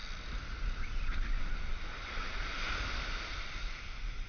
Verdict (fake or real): real